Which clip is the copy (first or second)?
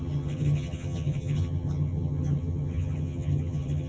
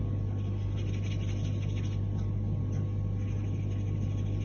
first